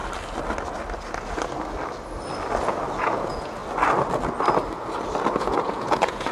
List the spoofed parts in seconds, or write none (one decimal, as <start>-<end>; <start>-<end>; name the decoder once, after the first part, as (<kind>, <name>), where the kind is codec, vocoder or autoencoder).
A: 3.0-3.6 (vocoder, Vocos); 5.4-6.3